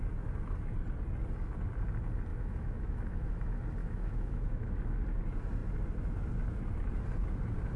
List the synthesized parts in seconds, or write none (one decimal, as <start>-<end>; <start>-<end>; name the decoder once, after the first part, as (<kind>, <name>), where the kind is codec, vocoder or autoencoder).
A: 2.3-3.3 (autoencoder, DAC-VAE); 3.8-4.7